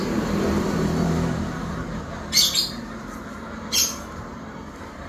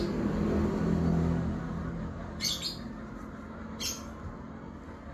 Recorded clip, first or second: second